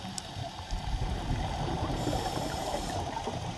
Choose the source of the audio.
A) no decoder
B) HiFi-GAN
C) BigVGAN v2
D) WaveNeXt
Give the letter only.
C